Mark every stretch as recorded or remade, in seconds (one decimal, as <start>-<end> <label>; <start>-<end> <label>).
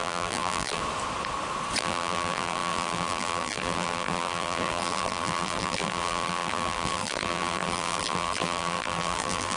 0.0-0.8 remade; 0.8-1.8 recorded; 1.8-9.6 remade